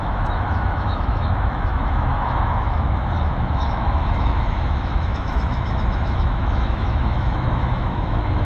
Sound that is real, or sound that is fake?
fake